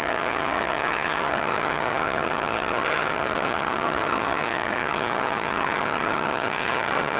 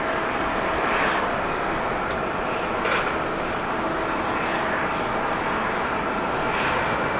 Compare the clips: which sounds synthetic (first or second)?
first